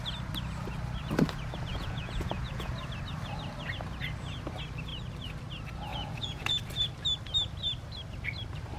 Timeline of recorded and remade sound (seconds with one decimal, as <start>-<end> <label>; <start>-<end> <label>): 0.0-1.7 recorded; 1.7-2.7 remade; 2.7-5.9 recorded; 5.9-6.5 remade; 6.5-8.8 recorded